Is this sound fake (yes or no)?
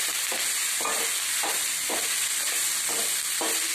no